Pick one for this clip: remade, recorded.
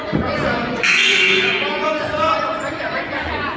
remade